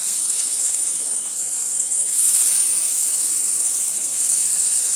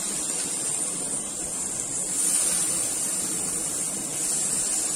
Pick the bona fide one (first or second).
second